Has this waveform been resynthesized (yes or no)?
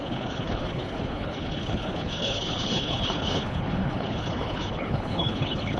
yes